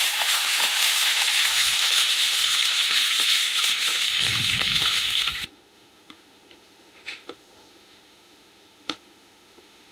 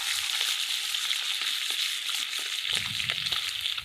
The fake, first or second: first